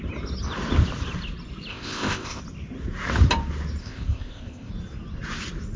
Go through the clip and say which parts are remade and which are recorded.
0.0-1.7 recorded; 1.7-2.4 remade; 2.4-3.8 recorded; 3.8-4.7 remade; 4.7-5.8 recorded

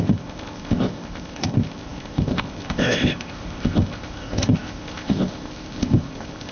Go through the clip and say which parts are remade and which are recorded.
0.0-6.5 remade